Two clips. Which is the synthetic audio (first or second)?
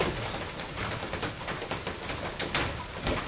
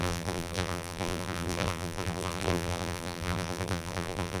second